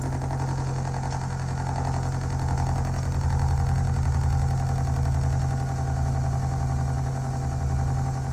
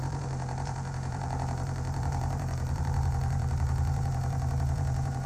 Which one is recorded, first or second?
first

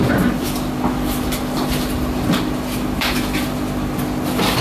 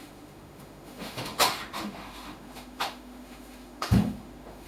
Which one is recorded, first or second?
first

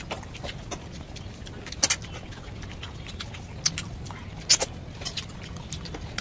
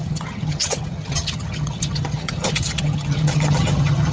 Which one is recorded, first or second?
first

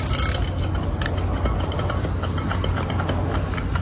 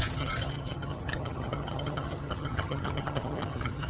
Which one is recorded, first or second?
first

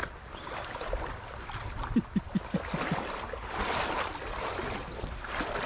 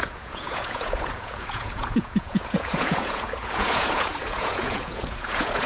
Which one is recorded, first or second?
first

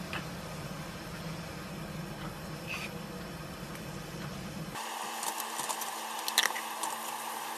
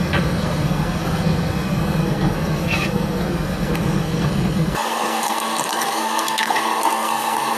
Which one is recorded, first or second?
first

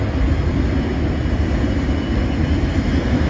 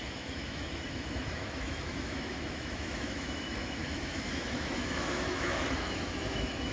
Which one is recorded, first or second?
first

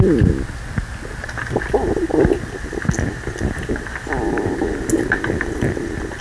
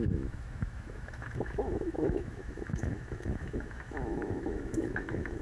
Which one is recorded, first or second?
first